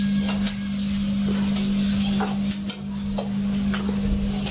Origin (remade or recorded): recorded